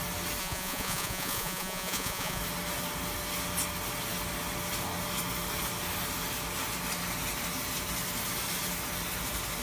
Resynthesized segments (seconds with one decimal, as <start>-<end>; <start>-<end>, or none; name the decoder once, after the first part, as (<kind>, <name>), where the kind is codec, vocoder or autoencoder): 0.4-2.4 (vocoder, Vocos)